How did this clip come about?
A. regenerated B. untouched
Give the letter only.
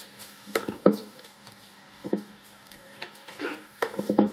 A